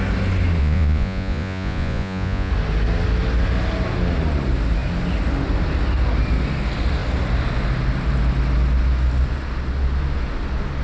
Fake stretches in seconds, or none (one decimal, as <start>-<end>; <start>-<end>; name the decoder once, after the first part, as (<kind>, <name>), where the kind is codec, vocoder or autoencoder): 0.6-2.5 (vocoder, Vocos)